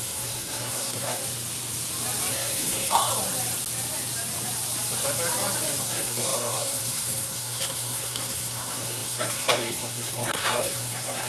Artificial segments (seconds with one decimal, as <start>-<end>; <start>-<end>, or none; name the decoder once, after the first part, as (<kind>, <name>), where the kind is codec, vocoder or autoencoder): 0.0-1.2 (codec, SNAC); 2.3-3.1; 5.8-11.3